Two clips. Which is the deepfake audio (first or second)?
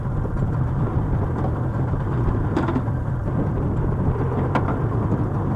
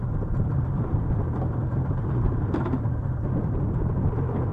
second